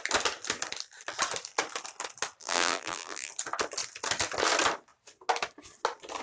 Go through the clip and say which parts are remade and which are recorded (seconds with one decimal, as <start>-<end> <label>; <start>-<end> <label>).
0.0-2.4 recorded; 2.4-3.3 remade; 3.3-6.2 recorded